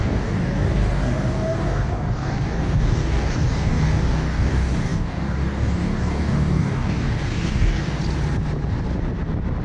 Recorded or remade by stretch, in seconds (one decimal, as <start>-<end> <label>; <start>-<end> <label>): 0.0-8.0 remade; 8.0-9.6 recorded